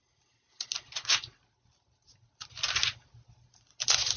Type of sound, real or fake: real